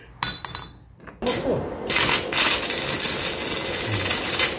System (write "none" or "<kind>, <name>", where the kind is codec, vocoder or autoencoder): none